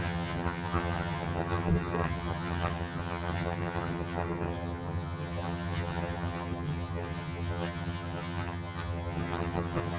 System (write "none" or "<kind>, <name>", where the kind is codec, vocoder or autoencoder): vocoder, HiFi-GAN